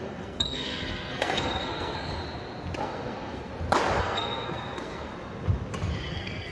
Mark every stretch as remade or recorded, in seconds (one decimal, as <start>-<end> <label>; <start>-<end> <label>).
0.0-2.1 remade; 2.1-2.8 recorded; 2.8-3.5 remade; 3.5-4.0 recorded; 4.0-5.1 remade; 5.1-6.1 recorded; 6.1-6.5 remade